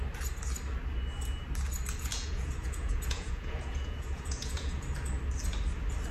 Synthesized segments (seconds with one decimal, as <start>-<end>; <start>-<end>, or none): 2.1-4.8